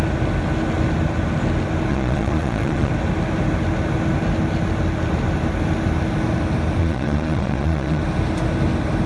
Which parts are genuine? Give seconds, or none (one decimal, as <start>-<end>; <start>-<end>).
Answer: 0.0-1.9; 2.9-6.8; 8.0-9.1